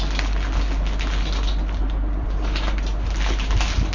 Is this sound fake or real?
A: real